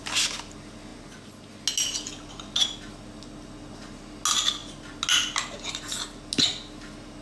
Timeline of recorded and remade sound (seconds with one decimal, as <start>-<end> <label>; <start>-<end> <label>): 0.0-7.2 recorded